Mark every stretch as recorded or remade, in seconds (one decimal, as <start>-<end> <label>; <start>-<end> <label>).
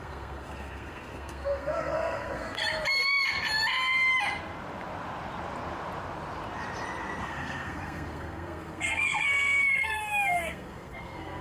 0.0-2.6 remade; 2.6-7.2 recorded; 7.2-11.4 remade